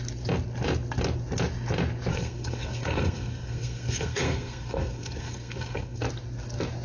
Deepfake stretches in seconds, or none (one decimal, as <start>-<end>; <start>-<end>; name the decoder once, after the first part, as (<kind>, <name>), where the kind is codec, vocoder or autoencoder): 2.1-6.0 (codec, SNAC)